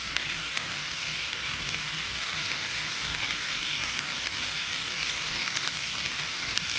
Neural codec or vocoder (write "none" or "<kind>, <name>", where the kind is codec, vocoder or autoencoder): codec, DAC